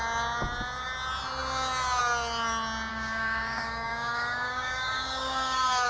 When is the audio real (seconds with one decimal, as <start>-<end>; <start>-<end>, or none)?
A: 0.0-2.9